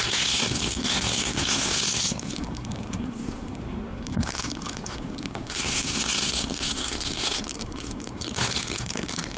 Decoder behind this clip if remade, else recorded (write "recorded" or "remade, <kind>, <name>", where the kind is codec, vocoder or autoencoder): remade, codec, SNAC